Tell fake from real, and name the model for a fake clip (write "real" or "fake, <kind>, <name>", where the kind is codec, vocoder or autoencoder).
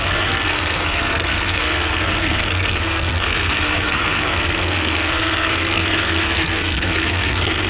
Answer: fake, codec, SNAC